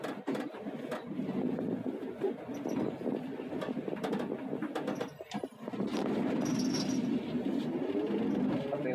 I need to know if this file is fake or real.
real